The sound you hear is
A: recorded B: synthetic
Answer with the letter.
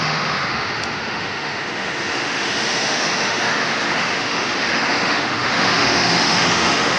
B